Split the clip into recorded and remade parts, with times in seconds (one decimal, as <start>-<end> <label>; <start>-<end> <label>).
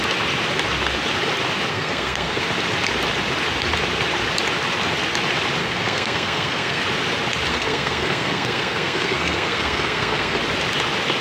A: 0.0-1.7 recorded; 1.7-2.4 remade; 2.4-5.6 recorded; 5.6-6.8 remade; 6.8-7.5 recorded; 7.5-10.4 remade; 10.4-11.2 recorded